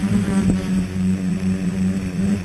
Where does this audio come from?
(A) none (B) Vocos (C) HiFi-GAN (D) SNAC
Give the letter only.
B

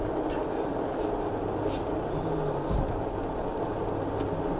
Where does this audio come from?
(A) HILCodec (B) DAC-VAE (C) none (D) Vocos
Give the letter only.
C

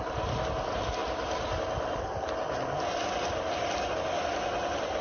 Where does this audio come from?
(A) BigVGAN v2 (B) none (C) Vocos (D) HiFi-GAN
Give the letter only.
B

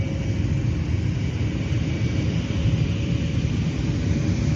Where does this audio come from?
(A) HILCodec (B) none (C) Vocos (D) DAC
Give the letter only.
B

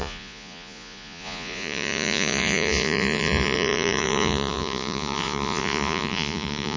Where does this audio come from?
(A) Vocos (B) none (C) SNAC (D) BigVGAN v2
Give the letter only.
A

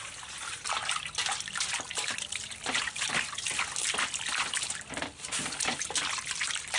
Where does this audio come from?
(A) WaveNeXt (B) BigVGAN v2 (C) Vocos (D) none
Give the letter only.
D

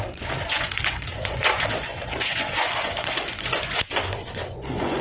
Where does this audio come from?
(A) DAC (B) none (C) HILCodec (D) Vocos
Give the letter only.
D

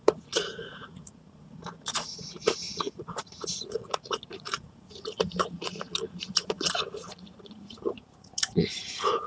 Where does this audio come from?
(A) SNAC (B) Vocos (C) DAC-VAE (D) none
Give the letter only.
B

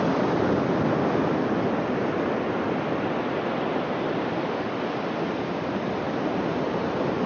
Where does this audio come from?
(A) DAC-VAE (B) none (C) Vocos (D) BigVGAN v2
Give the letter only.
B